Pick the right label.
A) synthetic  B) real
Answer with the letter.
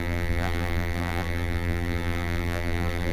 A